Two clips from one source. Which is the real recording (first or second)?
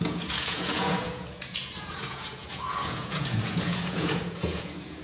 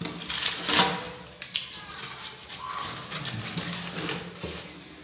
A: second